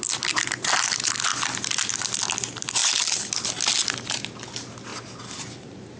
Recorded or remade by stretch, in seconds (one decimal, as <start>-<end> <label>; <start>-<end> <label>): 0.0-6.0 recorded